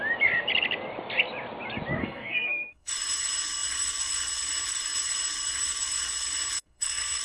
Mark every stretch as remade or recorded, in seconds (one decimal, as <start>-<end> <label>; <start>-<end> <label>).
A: 0.0-2.0 recorded; 2.0-2.9 remade; 2.9-6.6 recorded; 6.6-7.2 remade